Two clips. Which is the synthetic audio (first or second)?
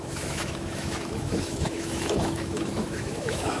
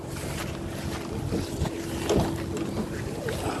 first